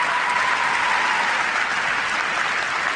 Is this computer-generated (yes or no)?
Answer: no